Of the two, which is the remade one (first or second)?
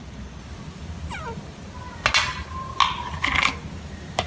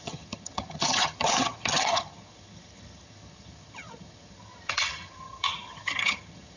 second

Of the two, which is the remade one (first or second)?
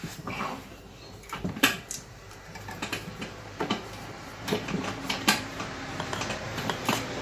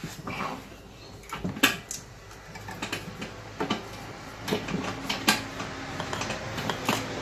first